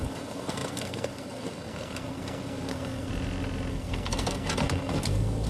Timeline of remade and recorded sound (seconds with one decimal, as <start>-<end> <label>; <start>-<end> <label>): 0.0-3.1 remade; 3.1-3.7 recorded; 3.7-5.5 remade